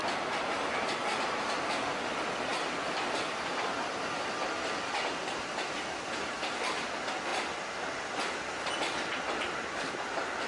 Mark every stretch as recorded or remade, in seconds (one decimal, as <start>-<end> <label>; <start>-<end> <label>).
0.0-2.5 remade; 2.5-5.8 recorded; 5.8-7.3 remade; 7.3-8.7 recorded; 8.7-10.5 remade